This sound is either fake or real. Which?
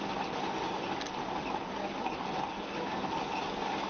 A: real